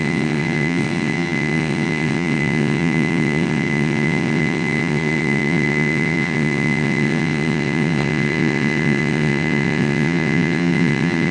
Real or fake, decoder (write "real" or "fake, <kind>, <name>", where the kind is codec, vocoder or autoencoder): fake, vocoder, WaveNeXt